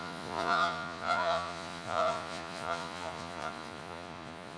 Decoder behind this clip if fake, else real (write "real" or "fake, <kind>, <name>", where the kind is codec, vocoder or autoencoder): fake, vocoder, Vocos